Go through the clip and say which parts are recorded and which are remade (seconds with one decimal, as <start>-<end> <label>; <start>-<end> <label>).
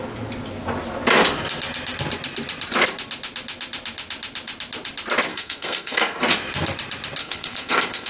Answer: 0.0-5.3 recorded; 5.3-6.2 remade; 6.2-7.2 recorded; 7.2-8.1 remade